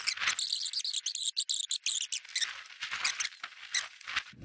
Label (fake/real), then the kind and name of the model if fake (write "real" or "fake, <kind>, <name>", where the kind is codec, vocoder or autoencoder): real